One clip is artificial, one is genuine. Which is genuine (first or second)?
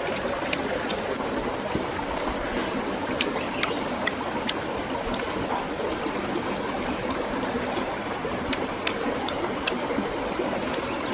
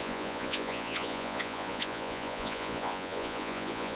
first